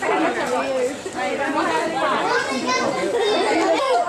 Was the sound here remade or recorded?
recorded